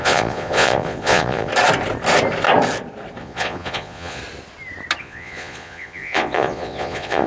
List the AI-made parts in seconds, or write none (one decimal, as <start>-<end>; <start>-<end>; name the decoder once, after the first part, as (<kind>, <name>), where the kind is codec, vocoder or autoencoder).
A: 0.0-1.5 (vocoder, Vocos); 3.2-4.2; 5.0-7.3